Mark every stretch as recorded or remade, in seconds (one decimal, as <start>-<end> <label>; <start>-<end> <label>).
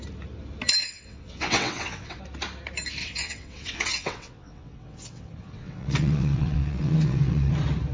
0.0-0.8 recorded; 0.8-2.2 remade; 2.2-3.0 recorded; 3.0-7.5 remade; 7.5-7.9 recorded